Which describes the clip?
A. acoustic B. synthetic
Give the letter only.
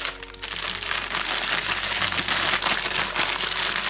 A